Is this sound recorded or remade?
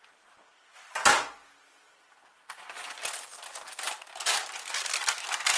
recorded